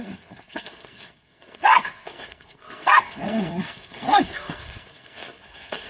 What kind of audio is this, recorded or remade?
remade